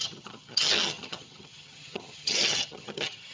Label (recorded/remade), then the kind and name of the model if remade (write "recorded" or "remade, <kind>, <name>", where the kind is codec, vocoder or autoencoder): remade, vocoder, HiFi-GAN